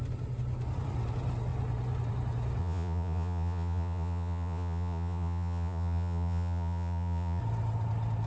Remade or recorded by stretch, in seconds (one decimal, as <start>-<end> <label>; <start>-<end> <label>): 0.0-2.6 recorded; 2.6-7.4 remade; 7.4-8.3 recorded